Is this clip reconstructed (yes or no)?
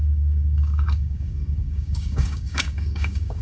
yes